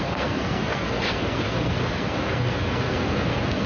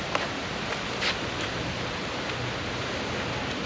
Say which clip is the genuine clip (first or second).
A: second